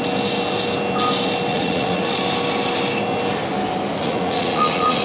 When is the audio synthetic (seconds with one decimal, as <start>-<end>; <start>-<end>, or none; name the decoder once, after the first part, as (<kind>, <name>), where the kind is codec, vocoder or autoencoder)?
1.5-2.1 (vocoder, Vocos); 4.0-5.0